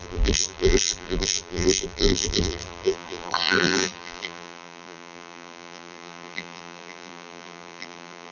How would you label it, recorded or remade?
remade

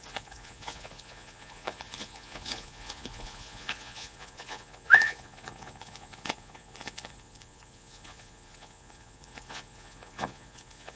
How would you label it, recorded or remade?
remade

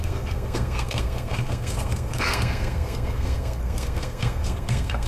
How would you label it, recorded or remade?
remade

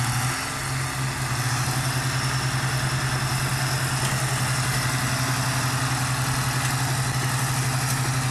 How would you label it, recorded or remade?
recorded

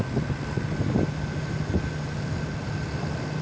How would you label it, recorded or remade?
recorded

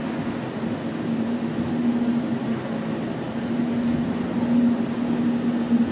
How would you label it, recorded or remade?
recorded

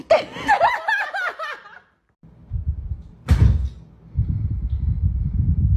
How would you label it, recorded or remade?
recorded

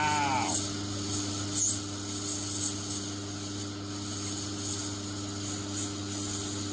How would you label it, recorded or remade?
recorded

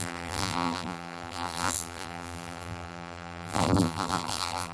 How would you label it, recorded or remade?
remade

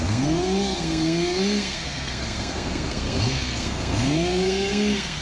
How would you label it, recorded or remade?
remade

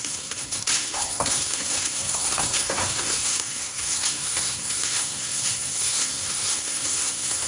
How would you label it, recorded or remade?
remade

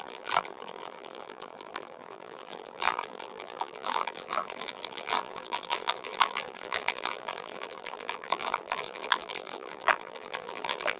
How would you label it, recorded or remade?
remade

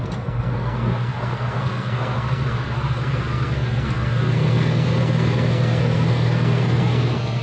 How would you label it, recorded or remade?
remade